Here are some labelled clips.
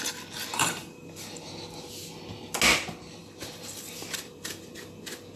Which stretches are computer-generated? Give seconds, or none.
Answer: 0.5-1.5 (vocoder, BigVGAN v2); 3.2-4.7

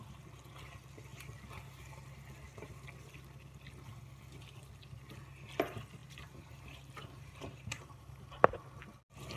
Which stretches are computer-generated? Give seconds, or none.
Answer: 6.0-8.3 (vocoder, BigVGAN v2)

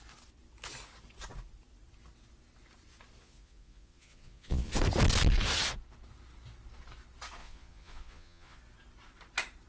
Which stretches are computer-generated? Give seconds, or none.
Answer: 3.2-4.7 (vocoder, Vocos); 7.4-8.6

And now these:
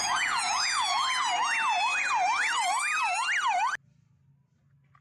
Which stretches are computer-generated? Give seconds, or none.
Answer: 0.0-1.1 (vocoder, Vocos)